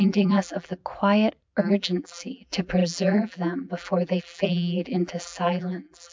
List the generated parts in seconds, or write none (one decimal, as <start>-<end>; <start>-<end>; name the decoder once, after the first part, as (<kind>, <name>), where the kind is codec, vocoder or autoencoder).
0.0-0.8 (vocoder, BigVGAN v2); 1.6-6.1